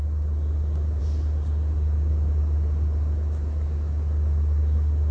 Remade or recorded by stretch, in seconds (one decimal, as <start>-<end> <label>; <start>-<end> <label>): 0.0-5.1 recorded